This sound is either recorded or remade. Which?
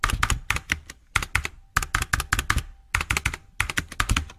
recorded